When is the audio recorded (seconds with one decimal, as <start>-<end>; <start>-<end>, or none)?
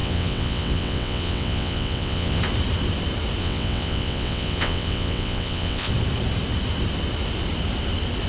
2.4-3.4; 5.9-8.3